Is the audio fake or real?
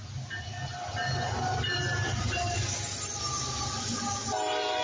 real